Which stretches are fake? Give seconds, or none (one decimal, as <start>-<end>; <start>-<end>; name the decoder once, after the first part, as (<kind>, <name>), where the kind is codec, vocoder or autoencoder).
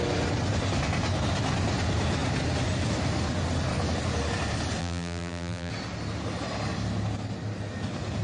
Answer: 4.8-5.7 (vocoder, BigVGAN v2)